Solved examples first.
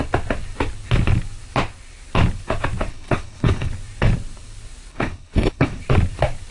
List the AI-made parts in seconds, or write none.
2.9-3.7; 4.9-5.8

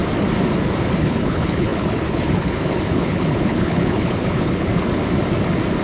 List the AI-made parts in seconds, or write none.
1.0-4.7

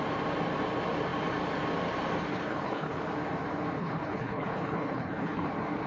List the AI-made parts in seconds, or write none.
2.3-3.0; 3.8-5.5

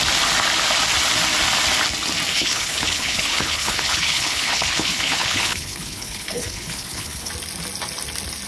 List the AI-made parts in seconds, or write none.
2.3-7.3